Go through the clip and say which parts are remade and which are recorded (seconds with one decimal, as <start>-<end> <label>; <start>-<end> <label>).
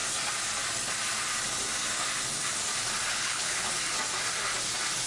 0.0-3.1 recorded; 3.1-3.7 remade; 3.7-5.1 recorded